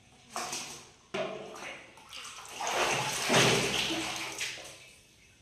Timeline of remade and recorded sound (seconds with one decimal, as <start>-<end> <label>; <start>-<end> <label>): 0.0-5.4 recorded